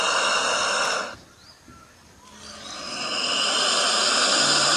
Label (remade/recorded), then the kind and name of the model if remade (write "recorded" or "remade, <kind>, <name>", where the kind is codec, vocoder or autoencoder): recorded